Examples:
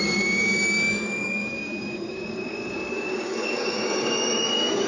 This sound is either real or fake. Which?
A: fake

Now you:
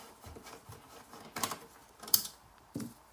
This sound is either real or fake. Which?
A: fake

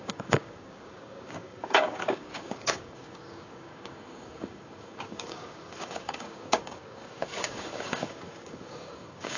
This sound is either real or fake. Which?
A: fake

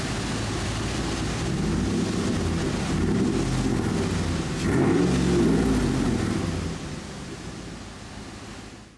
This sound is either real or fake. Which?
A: real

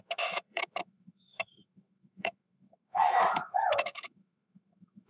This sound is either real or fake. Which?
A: fake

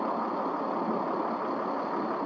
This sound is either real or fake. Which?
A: real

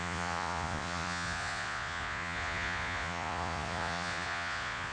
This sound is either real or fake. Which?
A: fake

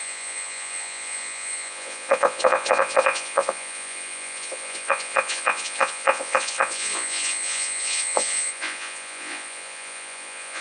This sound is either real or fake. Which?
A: fake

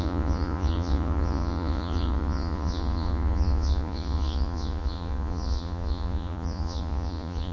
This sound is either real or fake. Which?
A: fake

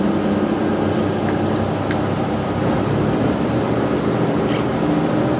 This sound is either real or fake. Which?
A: real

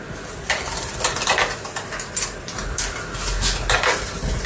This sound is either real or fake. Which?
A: real